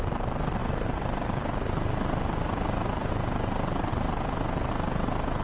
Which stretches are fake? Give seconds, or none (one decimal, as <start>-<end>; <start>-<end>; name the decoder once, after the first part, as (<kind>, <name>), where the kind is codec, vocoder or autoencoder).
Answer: 0.6-3.1 (vocoder, BigVGAN v2); 3.9-4.7